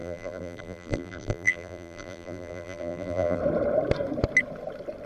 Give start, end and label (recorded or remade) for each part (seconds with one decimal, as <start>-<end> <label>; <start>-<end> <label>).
0.0-3.4 remade; 3.4-5.1 recorded